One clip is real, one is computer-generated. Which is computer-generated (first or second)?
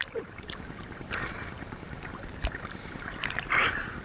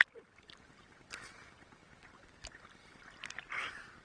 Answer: first